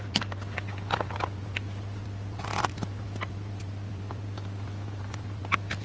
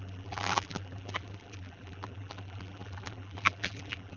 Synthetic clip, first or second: second